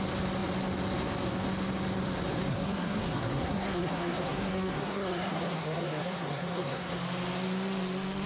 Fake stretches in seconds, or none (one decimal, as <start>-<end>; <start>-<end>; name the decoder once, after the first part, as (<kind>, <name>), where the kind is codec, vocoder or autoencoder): 2.5-7.0 (codec, SNAC)